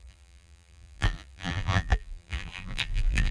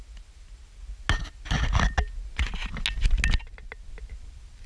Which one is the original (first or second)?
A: second